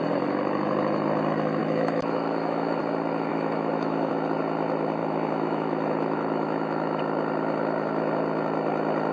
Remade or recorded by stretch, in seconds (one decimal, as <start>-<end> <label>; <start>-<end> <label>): 0.0-1.6 recorded; 1.6-2.8 remade; 2.8-3.3 recorded; 3.3-4.1 remade; 4.1-5.0 recorded; 5.0-7.0 remade; 7.0-9.1 recorded